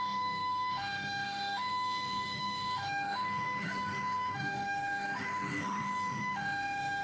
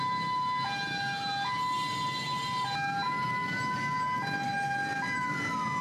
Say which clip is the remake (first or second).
first